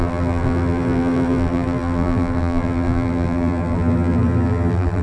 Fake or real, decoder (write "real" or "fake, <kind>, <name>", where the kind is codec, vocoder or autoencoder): fake, vocoder, BigVGAN v2